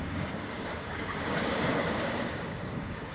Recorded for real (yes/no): no